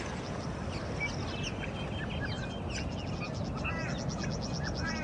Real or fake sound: real